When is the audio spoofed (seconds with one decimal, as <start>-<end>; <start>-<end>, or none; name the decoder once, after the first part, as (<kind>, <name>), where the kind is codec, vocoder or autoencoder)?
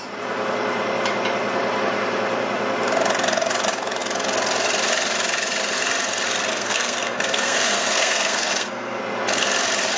6.5-9.0 (codec, SNAC)